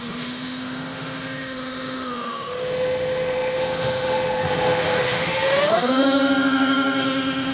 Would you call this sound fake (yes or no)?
yes